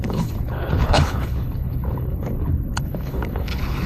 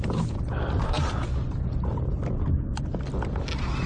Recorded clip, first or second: second